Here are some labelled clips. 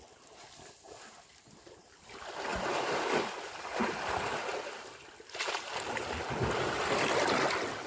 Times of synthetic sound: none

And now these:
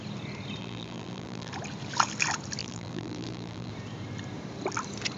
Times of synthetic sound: 0.6-1.5 (vocoder, BigVGAN v2); 2.6-3.7

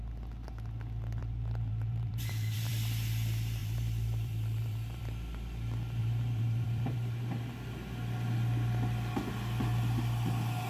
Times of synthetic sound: 1.2-2.7 (vocoder, BigVGAN v2); 3.6-5.0; 6.0-7.3